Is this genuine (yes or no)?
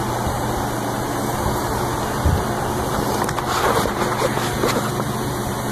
no